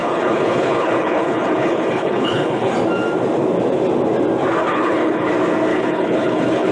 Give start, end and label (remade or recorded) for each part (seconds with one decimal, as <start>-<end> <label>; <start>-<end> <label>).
0.0-2.7 remade; 2.7-4.6 recorded; 4.6-5.3 remade; 5.3-5.7 recorded; 5.7-6.7 remade